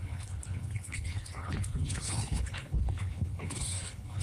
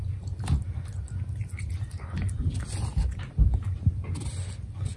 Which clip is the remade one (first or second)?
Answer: first